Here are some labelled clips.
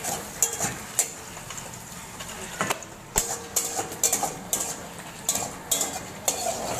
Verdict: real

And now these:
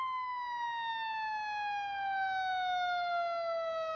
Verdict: real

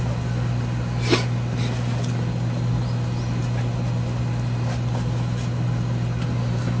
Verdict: real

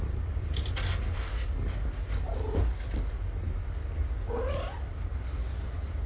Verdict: real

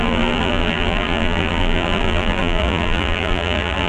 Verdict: fake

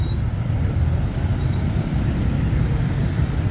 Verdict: fake